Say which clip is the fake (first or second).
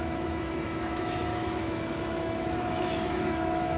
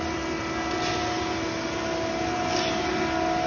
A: first